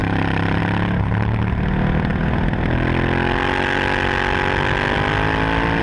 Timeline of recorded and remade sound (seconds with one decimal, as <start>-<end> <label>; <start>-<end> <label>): 0.0-0.6 remade; 0.6-5.8 recorded